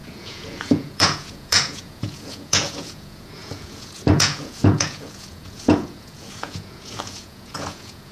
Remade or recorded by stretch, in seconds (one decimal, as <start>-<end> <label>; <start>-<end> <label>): 0.0-8.1 remade